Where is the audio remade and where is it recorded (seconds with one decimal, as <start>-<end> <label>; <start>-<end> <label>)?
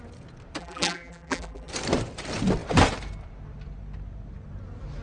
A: 0.0-0.6 recorded; 0.6-1.7 remade; 1.7-5.0 recorded